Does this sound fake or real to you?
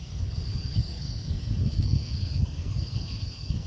fake